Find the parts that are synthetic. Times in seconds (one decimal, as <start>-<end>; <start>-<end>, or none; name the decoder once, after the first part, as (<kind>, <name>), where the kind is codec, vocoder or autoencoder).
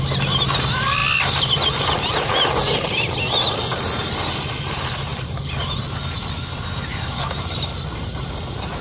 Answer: 5.1-5.8 (vocoder, BigVGAN v2)